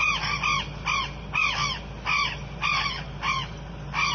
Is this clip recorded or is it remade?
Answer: recorded